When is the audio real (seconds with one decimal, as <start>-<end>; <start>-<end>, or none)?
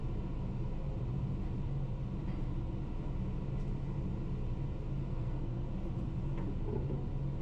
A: 0.0-5.1; 5.7-7.4